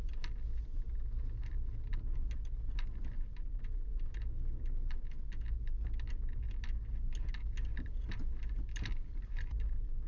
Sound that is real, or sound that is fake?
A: real